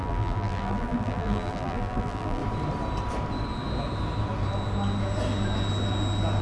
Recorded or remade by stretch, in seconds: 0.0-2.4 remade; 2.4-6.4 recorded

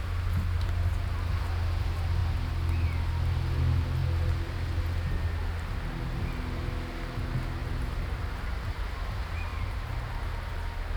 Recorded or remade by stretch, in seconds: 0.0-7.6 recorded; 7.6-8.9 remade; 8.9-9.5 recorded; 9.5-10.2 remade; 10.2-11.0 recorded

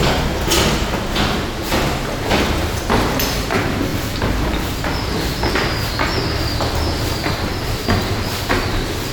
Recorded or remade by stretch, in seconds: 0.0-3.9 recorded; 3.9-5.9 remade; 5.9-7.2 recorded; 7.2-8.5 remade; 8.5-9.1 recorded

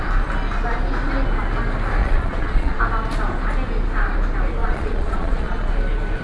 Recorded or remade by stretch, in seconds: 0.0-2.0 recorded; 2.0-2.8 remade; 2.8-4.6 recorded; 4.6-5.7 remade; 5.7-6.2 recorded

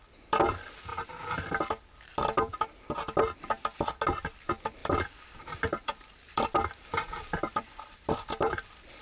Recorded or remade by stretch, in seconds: 0.0-4.8 recorded; 4.8-9.0 remade

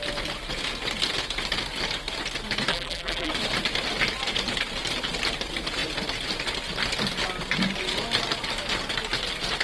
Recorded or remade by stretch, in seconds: 0.0-2.7 recorded; 2.7-3.3 remade; 3.3-9.6 recorded

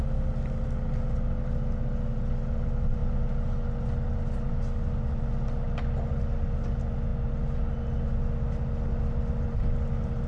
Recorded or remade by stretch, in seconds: 0.0-10.3 recorded

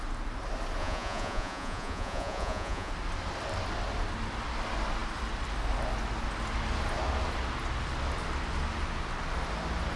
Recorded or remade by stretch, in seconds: 0.0-0.8 recorded; 0.8-2.9 remade; 2.9-10.0 recorded